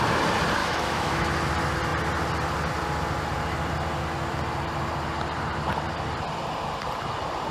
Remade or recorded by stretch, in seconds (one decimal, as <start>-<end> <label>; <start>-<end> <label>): 0.0-0.6 recorded; 0.6-1.3 remade; 1.3-7.5 recorded